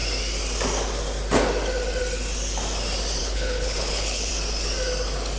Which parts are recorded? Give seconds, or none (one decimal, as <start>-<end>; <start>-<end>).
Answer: 0.0-3.2; 4.3-5.4